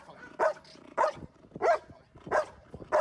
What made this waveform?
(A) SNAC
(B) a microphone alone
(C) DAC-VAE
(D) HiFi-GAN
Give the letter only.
B